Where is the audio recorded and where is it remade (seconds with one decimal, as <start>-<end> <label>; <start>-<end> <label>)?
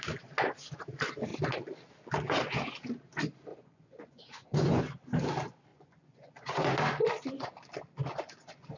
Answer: 0.0-3.5 recorded; 3.5-4.8 remade; 4.8-5.7 recorded; 5.7-6.7 remade; 6.7-8.8 recorded